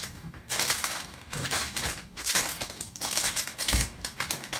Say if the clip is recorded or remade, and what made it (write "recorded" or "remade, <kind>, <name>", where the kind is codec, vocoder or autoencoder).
remade, codec, DAC